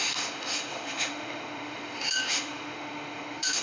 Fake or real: fake